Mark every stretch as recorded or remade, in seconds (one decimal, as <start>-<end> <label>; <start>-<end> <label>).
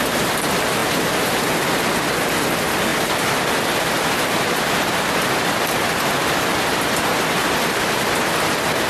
0.0-2.9 recorded; 2.9-4.8 remade; 4.8-8.9 recorded